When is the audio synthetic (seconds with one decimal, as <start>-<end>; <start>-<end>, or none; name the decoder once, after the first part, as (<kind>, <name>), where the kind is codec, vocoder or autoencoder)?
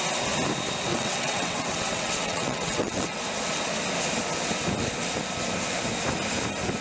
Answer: 0.9-3.2 (vocoder, WaveNeXt)